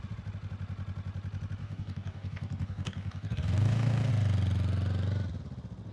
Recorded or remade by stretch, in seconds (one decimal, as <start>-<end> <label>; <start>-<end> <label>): 0.0-1.6 recorded; 1.6-4.1 remade; 4.1-5.9 recorded

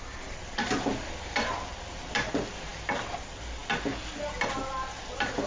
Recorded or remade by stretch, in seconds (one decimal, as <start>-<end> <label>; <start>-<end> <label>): 0.0-5.5 recorded

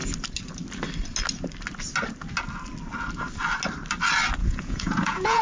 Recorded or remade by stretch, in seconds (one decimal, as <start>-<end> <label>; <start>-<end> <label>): 0.0-4.4 recorded; 4.4-5.4 remade

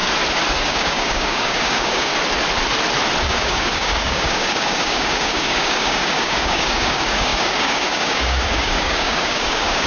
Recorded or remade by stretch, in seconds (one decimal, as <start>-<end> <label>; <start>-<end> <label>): 0.0-0.5 recorded; 0.5-2.1 remade; 2.1-3.2 recorded; 3.2-9.9 remade

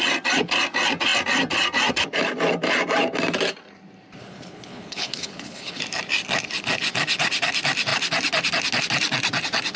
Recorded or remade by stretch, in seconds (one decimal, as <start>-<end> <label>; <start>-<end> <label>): 0.0-4.2 recorded; 4.2-5.8 remade; 5.8-9.8 recorded